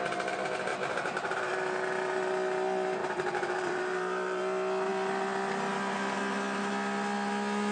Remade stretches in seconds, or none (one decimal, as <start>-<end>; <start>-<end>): 0.7-1.5; 3.0-4.4